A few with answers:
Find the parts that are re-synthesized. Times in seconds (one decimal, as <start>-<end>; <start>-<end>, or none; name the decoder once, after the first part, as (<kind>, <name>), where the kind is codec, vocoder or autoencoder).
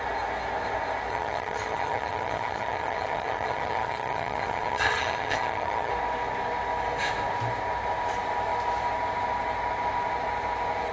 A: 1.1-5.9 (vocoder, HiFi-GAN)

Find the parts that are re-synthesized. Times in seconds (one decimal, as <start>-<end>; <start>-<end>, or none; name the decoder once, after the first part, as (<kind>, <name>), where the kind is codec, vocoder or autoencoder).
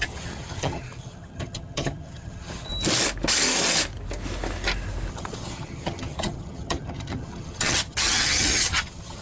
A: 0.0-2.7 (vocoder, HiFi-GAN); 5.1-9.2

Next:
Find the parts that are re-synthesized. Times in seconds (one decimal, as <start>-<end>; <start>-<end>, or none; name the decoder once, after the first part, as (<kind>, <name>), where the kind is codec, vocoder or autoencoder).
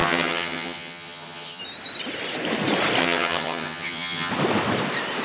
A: 0.0-1.6 (vocoder, HiFi-GAN); 3.0-4.3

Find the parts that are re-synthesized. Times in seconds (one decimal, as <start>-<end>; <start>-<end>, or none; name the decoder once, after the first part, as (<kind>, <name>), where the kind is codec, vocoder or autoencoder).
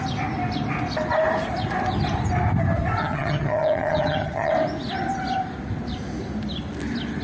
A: 3.0-4.5 (vocoder, HiFi-GAN)